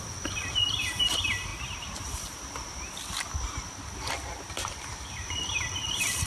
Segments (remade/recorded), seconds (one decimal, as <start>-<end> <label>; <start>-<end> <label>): 0.0-1.5 remade; 1.5-4.5 recorded; 4.5-6.3 remade